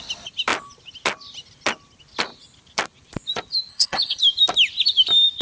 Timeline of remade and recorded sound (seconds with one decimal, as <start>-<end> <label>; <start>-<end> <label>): 0.0-3.7 recorded; 3.7-4.2 remade; 4.2-5.4 recorded